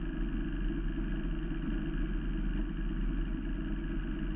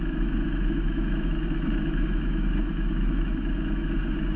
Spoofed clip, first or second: second